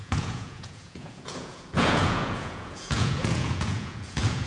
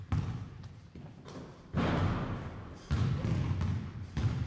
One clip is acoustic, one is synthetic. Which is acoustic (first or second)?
second